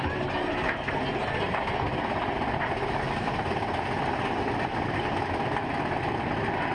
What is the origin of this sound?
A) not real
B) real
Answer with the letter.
B